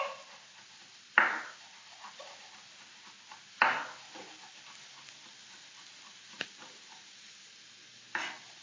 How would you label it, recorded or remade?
recorded